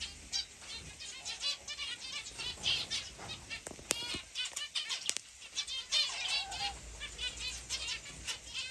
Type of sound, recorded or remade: recorded